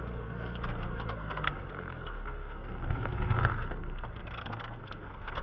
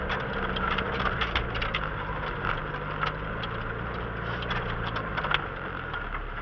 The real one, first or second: second